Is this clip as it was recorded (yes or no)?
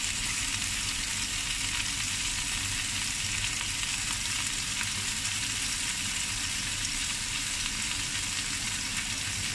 yes